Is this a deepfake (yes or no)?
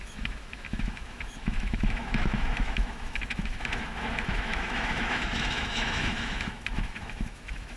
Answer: yes